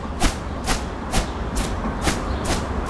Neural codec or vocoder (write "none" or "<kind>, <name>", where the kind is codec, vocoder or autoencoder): none